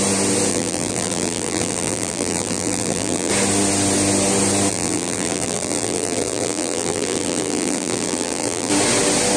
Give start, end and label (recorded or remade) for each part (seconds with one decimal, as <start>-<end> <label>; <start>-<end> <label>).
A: 0.0-0.5 recorded; 0.5-3.3 remade; 3.3-4.7 recorded; 4.7-8.7 remade; 8.7-9.4 recorded